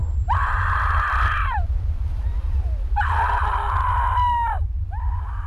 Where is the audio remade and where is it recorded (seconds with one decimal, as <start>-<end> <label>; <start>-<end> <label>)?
0.0-3.3 remade; 3.3-5.5 recorded